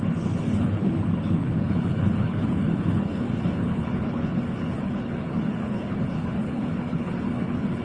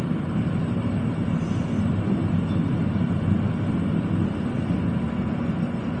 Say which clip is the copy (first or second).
first